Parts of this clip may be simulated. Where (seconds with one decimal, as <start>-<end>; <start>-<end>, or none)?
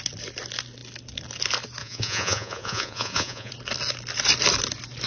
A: 1.8-3.5